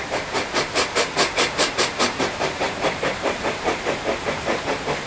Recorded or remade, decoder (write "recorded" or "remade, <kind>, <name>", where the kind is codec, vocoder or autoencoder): remade, vocoder, BigVGAN v2